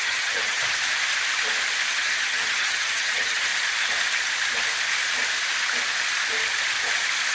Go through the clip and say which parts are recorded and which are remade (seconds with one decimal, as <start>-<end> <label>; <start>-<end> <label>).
0.0-0.6 remade; 0.6-1.9 recorded; 1.9-3.5 remade; 3.5-7.3 recorded